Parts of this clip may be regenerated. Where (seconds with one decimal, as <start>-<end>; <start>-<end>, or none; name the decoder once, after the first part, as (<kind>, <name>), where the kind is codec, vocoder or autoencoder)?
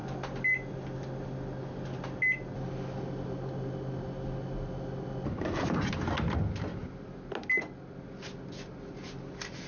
none